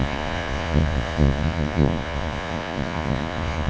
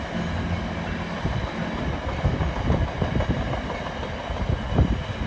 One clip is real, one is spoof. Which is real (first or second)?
second